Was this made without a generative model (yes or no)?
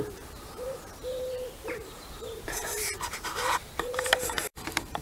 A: no